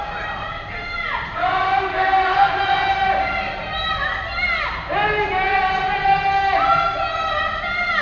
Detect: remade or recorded recorded